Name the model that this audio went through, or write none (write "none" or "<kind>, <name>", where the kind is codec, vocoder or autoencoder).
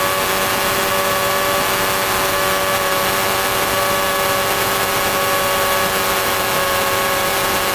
none